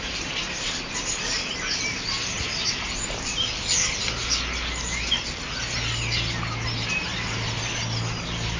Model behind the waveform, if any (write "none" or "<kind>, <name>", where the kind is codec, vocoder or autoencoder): none